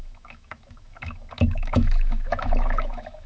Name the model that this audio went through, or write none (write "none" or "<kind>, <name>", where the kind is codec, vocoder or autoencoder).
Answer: autoencoder, DAC-VAE